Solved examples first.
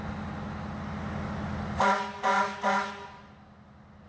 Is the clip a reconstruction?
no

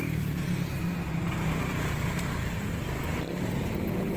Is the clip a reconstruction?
no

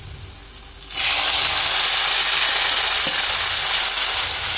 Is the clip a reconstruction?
no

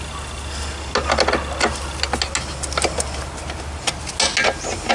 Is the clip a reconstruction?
no